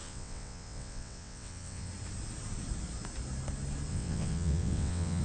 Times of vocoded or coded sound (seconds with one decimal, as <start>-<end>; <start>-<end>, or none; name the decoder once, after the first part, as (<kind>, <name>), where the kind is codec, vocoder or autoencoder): 0.0-1.9 (vocoder, WaveNeXt); 3.9-5.2